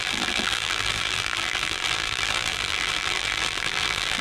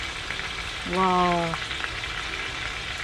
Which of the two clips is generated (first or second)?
first